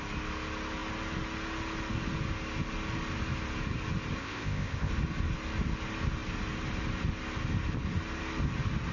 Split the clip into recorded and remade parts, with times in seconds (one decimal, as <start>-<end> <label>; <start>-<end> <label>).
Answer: 0.0-4.2 recorded; 4.2-4.9 remade; 4.9-8.9 recorded